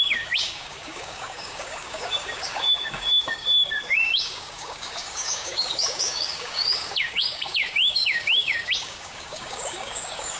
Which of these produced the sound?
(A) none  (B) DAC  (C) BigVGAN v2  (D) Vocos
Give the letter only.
B